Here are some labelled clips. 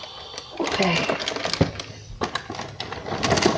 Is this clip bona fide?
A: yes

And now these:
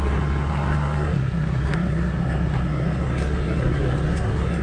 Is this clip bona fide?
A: no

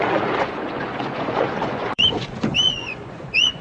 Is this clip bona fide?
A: no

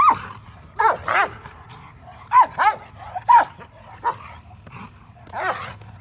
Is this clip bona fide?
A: no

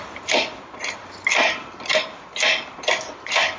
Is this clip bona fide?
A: yes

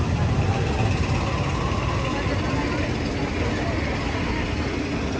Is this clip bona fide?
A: yes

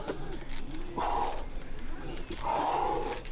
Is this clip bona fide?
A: yes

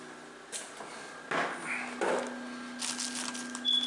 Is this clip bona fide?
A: yes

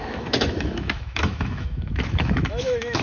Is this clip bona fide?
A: no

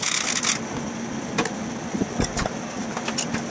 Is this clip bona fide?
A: yes